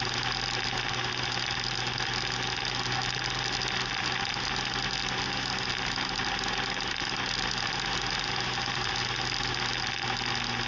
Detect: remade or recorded recorded